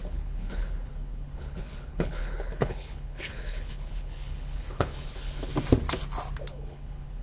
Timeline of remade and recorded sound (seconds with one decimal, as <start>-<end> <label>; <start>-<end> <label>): 0.0-5.5 remade; 5.5-6.5 recorded; 6.5-7.2 remade